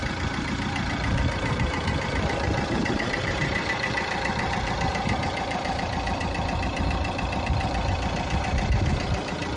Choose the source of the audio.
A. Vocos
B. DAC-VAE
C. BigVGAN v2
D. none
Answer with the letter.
C